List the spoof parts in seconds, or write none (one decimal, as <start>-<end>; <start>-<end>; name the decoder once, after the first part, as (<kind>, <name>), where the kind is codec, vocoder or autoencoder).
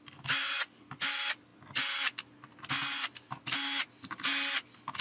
none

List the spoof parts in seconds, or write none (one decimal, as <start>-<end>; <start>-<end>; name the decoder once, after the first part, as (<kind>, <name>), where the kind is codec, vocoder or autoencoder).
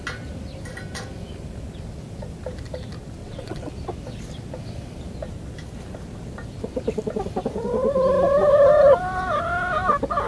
3.2-3.7 (vocoder, WaveNeXt)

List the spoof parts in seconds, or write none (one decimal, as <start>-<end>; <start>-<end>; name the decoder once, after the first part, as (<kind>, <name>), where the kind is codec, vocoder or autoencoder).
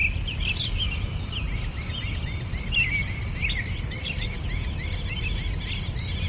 none